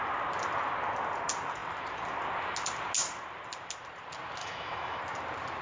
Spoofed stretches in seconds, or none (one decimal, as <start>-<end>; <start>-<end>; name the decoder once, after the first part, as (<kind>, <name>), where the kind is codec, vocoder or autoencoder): 4.4-5.0 (autoencoder, DAC-VAE)